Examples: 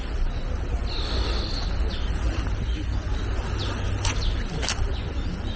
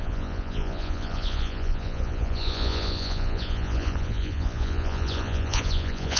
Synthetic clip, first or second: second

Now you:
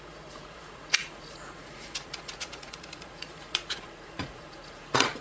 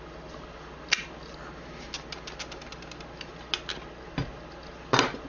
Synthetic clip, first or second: first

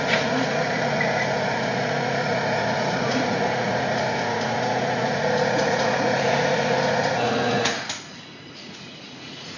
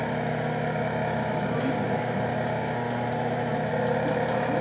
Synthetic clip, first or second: first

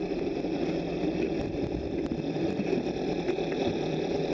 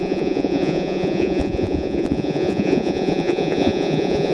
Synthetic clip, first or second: second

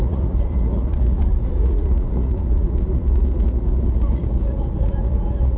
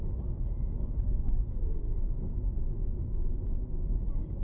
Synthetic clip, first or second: first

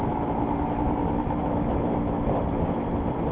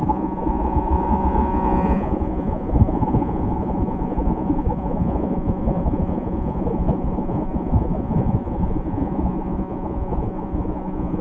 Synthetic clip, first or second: second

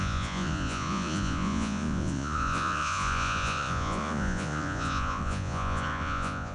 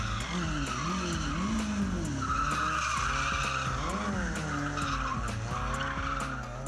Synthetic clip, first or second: first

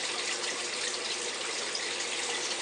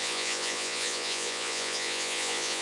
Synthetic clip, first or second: second